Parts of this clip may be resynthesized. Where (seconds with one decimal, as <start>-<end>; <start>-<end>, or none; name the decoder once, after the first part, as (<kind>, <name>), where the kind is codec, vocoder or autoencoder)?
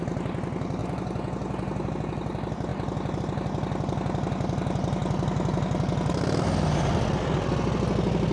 0.8-1.9 (vocoder, Vocos)